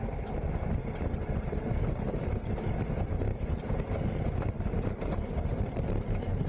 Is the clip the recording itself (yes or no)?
yes